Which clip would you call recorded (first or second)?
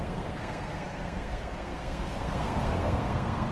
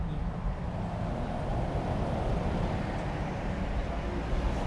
second